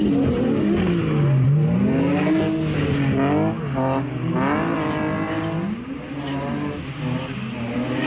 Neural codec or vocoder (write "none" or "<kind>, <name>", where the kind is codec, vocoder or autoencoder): none